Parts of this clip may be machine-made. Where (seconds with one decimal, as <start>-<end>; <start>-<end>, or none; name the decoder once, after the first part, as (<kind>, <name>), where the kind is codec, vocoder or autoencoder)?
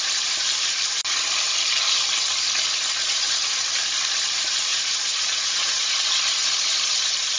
3.0-3.7 (vocoder, Vocos); 4.7-5.9